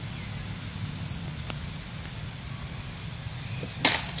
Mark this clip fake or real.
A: real